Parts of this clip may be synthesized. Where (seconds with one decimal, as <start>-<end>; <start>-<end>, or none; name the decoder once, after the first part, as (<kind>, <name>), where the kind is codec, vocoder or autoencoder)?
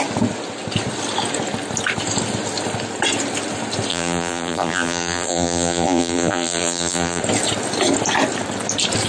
3.9-7.2 (vocoder, BigVGAN v2)